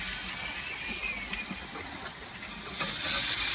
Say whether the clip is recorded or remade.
recorded